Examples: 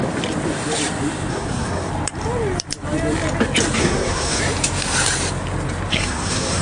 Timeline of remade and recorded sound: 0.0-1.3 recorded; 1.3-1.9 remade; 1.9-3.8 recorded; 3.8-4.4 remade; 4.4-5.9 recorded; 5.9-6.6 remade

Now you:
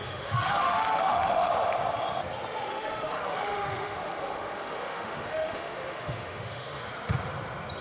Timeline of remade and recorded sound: 0.0-1.5 remade; 1.5-2.7 recorded; 2.7-6.8 remade; 6.8-7.8 recorded

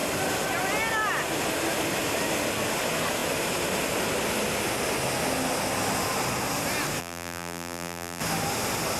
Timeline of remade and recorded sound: 0.0-7.0 recorded; 7.0-8.2 remade; 8.2-9.0 recorded

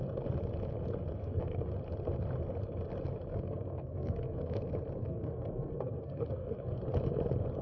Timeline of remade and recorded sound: 0.0-1.2 recorded; 1.2-1.7 remade; 1.7-3.3 recorded; 3.3-4.6 remade; 4.6-5.0 recorded; 5.0-6.8 remade; 6.8-7.6 recorded

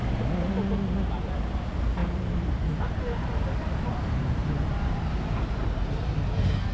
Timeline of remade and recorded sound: 0.0-2.0 recorded; 2.0-5.2 remade; 5.2-6.7 recorded

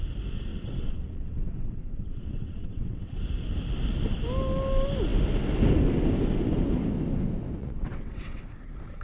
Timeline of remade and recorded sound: 0.0-0.5 recorded; 0.5-3.2 remade; 3.2-7.6 recorded; 7.6-8.4 remade; 8.4-9.0 recorded

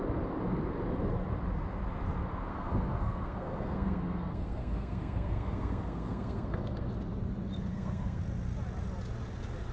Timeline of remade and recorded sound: 0.0-2.5 recorded; 2.5-6.9 remade; 6.9-7.7 recorded; 7.7-8.2 remade; 8.2-9.7 recorded